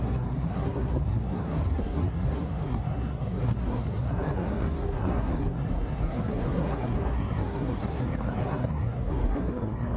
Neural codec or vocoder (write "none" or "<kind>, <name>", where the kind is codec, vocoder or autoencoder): codec, SNAC